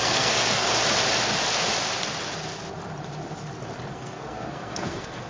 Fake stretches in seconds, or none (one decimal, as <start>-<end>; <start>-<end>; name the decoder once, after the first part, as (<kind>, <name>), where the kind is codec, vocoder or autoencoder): 0.0-0.7 (codec, SNAC); 3.9-5.3

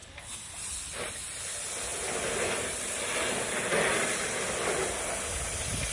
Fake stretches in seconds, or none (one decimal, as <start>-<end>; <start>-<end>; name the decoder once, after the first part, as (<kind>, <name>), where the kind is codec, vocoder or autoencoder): none

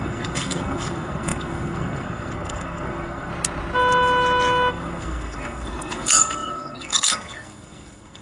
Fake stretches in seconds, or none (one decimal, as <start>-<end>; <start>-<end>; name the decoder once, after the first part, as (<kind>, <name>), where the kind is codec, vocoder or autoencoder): 0.0-3.3 (codec, SNAC); 4.7-8.2

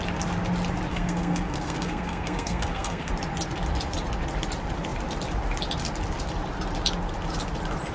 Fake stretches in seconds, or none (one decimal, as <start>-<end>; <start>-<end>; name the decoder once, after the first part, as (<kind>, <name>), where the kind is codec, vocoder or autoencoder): 0.9-3.1 (codec, SNAC)

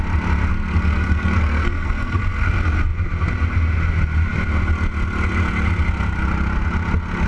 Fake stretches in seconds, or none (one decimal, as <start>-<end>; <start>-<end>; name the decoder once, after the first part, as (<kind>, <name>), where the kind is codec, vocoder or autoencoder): 0.5-2.5 (codec, SNAC)

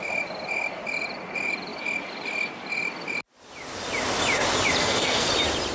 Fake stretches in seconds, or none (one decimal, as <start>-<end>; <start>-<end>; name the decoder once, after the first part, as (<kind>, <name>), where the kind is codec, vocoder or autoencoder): 4.8-5.3 (codec, SNAC)

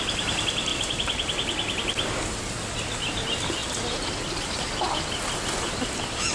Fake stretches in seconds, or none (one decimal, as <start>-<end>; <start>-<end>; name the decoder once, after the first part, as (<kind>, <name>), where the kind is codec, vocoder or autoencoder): none

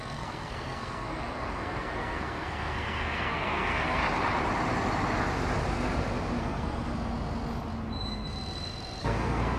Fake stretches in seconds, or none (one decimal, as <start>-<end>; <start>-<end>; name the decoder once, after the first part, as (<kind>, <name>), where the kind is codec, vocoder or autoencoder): 0.0-4.0 (codec, SNAC); 6.4-6.9; 9.0-9.6